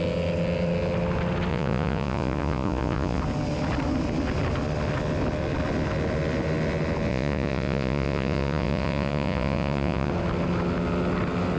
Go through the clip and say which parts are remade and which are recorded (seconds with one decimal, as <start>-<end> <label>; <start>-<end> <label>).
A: 0.0-1.5 recorded; 1.5-3.2 remade; 3.2-7.1 recorded; 7.1-10.1 remade; 10.1-11.6 recorded